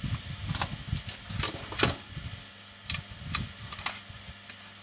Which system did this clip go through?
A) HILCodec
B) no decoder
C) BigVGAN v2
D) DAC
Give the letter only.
B